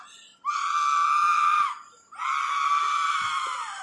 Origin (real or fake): real